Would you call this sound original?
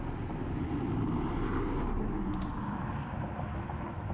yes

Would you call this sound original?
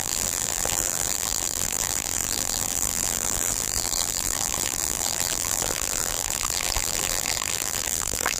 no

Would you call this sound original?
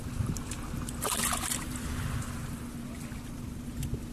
yes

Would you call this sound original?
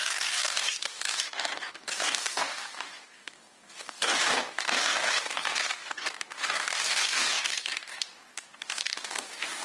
no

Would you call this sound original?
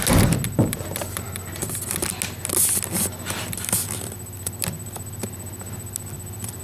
yes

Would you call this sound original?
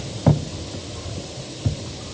yes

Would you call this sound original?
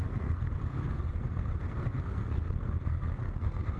no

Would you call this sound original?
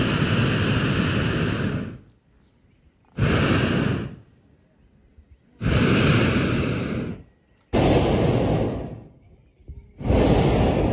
yes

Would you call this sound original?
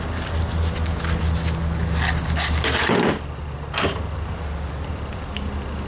yes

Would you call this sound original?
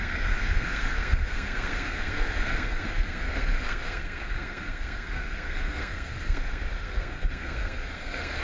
no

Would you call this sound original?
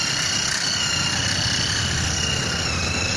yes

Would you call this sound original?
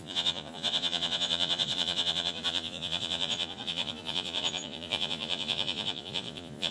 no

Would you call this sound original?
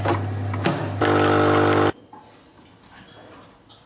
yes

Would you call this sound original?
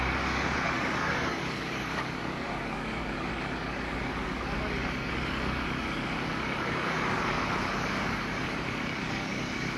no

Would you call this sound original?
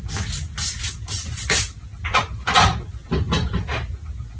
yes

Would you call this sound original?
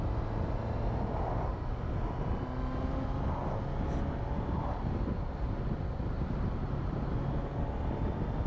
yes